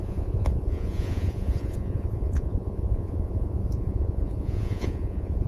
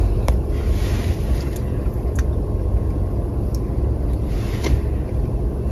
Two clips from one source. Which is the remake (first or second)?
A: first